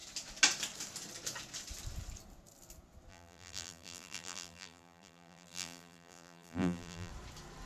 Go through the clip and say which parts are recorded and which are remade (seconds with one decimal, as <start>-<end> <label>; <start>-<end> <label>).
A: 0.0-3.1 recorded; 3.1-7.1 remade; 7.1-7.7 recorded